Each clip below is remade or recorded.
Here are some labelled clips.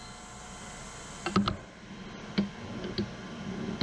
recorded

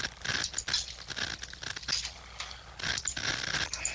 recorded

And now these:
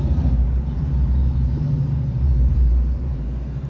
remade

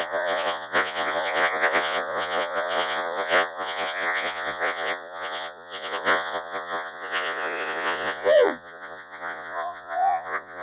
remade